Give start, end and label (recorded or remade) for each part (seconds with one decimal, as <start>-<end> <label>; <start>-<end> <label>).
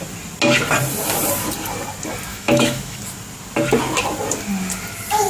0.0-2.3 recorded; 2.3-3.0 remade; 3.0-5.3 recorded